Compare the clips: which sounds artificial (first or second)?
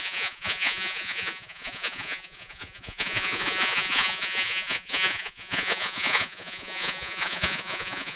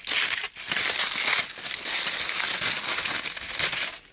first